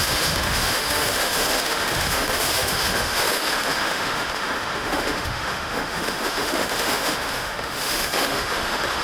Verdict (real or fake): fake